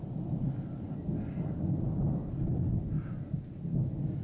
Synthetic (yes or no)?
no